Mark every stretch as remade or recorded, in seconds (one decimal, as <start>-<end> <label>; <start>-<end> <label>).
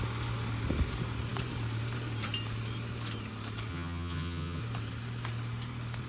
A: 0.0-3.7 recorded; 3.7-4.6 remade; 4.6-6.1 recorded